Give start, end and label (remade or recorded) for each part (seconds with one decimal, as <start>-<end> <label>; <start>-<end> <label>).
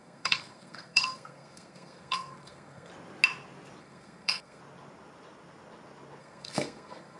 0.0-2.9 remade; 2.9-3.8 recorded; 3.8-4.6 remade; 4.6-6.2 recorded; 6.2-7.2 remade